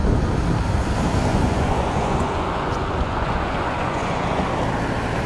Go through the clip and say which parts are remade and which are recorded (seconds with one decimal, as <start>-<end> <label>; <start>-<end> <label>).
0.0-1.3 recorded; 1.3-4.5 remade; 4.5-5.3 recorded